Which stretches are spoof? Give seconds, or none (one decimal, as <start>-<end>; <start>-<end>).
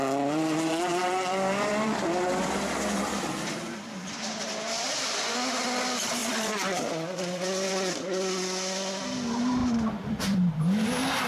0.9-5.3; 6.2-7.7; 9.6-10.5